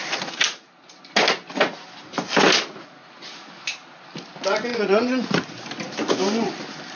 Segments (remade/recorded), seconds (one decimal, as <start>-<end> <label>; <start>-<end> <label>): 0.0-4.7 recorded; 4.7-5.5 remade; 5.5-7.0 recorded